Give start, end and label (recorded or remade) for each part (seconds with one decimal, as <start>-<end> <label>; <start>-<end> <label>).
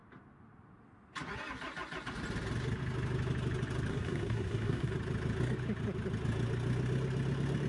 0.0-3.9 recorded; 3.9-4.9 remade; 4.9-7.7 recorded